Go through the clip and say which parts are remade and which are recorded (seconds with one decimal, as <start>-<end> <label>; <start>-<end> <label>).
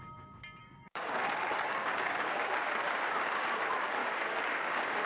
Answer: 0.0-0.6 recorded; 0.6-1.2 remade; 1.2-1.8 recorded; 1.8-3.5 remade; 3.5-4.0 recorded; 4.0-5.1 remade